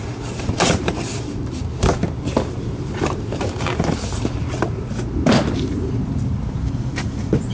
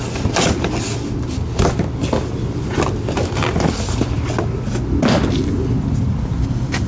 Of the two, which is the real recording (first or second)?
second